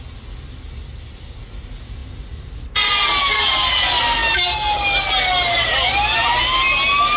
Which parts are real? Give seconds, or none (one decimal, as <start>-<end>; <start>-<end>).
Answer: 0.0-7.2